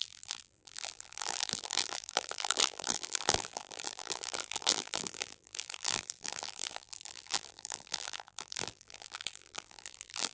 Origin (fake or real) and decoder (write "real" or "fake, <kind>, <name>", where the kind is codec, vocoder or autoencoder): fake, vocoder, BigVGAN v2